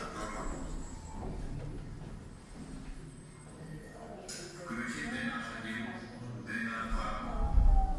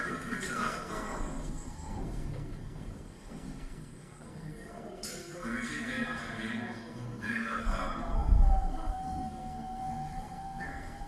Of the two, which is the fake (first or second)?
second